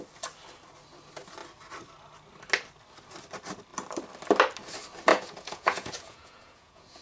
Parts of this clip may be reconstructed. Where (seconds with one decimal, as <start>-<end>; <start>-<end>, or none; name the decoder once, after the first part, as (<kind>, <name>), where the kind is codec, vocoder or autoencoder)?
5.1-7.0 (vocoder, Vocos)